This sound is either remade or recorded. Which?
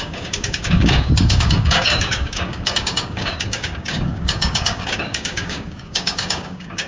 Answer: remade